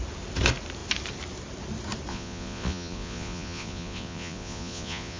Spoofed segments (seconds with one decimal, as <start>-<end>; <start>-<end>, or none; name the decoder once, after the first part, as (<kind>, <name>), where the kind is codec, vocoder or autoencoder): 2.1-5.2 (vocoder, Vocos)